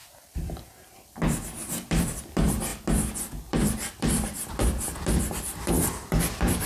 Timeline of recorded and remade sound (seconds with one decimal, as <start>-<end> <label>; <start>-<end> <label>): 0.0-2.7 remade; 2.7-3.5 recorded; 3.5-6.7 remade